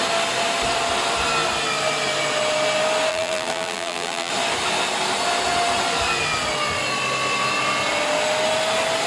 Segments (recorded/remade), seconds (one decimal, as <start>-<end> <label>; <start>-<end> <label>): 0.0-3.1 recorded; 3.1-4.3 remade; 4.3-9.1 recorded